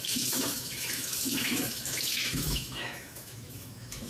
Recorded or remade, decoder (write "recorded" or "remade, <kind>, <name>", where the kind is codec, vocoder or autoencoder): remade, autoencoder, DAC-VAE